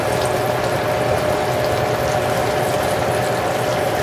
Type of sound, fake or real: real